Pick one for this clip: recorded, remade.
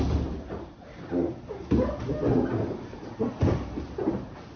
recorded